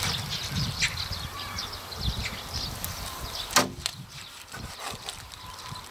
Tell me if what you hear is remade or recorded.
recorded